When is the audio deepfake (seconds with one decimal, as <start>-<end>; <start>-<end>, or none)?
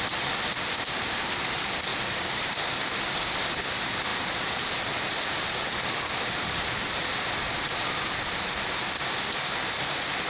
1.9-2.7; 4.1-9.0